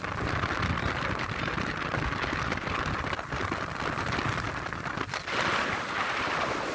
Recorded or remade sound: recorded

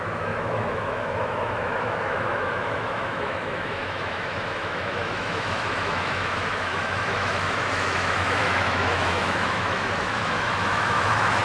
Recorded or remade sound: remade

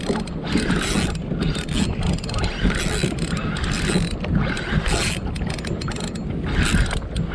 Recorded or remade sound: recorded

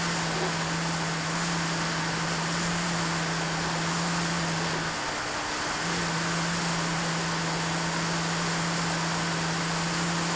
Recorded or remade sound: recorded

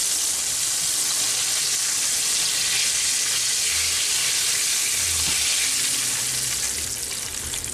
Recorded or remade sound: recorded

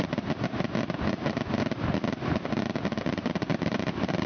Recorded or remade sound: recorded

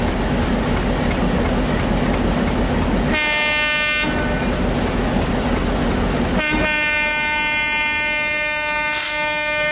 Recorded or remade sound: recorded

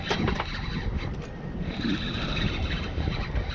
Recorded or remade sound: recorded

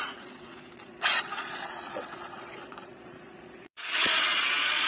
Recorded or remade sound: remade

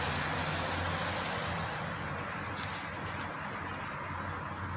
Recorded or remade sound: recorded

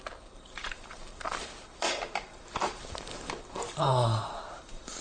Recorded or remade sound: remade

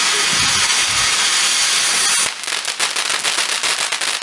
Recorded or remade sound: recorded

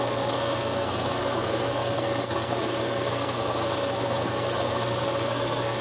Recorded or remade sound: remade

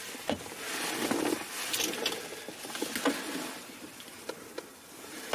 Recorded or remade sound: recorded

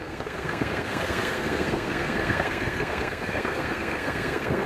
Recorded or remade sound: remade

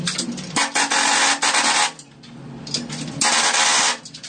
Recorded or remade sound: recorded